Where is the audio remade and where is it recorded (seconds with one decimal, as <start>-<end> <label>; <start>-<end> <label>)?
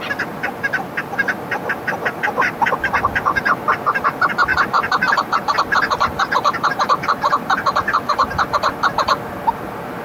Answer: 0.0-4.5 recorded; 4.5-7.3 remade; 7.3-10.0 recorded